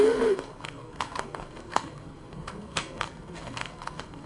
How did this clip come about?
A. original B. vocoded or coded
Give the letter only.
B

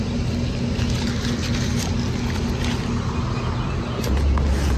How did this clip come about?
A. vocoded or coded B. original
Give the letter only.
B